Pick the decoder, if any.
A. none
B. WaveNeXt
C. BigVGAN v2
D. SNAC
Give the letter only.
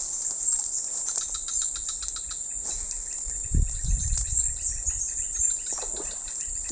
A